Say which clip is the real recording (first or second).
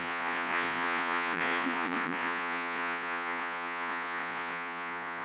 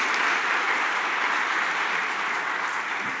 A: second